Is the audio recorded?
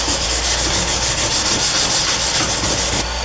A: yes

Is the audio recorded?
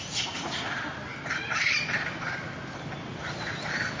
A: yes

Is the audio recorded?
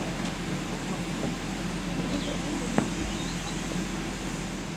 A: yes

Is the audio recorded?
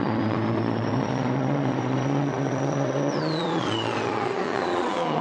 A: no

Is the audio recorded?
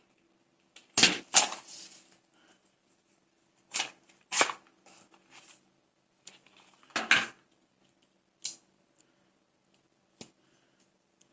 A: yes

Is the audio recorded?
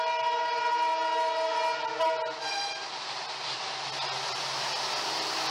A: yes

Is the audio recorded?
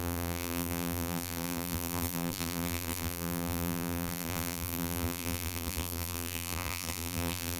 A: no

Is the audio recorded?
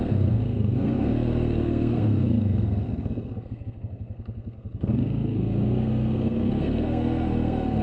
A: no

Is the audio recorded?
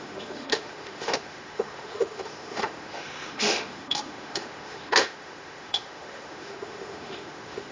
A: no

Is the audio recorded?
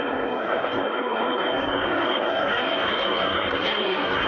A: no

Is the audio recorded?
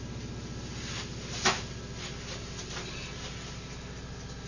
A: yes